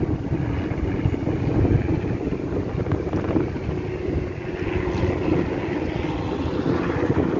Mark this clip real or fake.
real